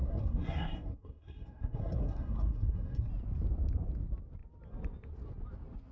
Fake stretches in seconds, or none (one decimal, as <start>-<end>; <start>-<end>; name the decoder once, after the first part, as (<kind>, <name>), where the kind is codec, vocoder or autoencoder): 0.0-3.1 (codec, SNAC)